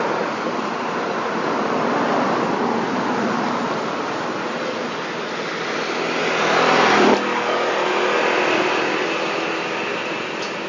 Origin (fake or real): real